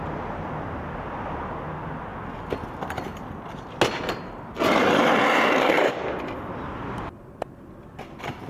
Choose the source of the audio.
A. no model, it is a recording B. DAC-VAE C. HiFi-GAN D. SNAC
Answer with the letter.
A